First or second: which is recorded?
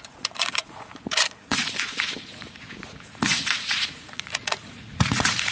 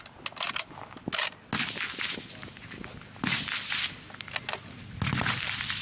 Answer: second